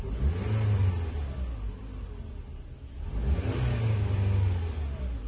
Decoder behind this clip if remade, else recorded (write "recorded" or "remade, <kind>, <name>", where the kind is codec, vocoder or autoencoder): recorded